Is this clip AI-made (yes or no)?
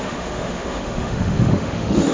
yes